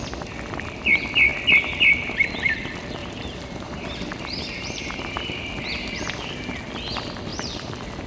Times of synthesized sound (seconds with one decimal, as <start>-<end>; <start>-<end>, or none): 3.0-6.6; 7.3-8.1